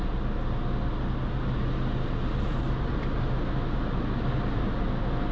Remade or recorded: recorded